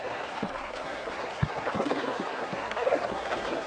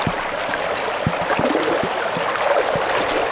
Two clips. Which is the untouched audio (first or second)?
second